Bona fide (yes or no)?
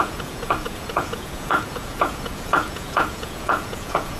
no